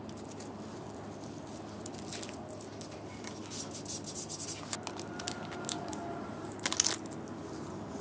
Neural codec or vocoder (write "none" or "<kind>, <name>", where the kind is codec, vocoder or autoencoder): none